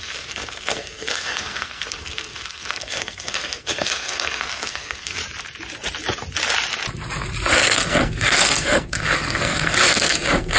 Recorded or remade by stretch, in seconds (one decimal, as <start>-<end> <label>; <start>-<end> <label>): 0.0-5.2 remade; 5.2-7.5 recorded; 7.5-10.6 remade